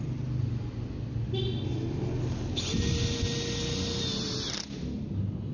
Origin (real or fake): real